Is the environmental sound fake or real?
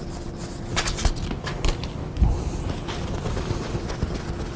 real